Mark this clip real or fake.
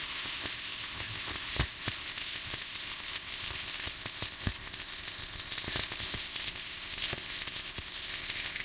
fake